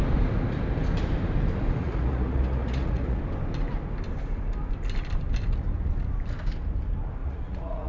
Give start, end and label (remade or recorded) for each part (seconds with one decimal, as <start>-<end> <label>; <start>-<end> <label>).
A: 0.0-1.8 recorded; 1.8-3.2 remade; 3.2-7.2 recorded; 7.2-7.9 remade